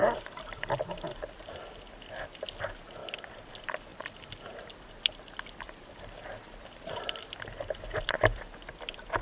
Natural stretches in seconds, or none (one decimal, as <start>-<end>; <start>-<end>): 1.6-3.0; 3.5-3.9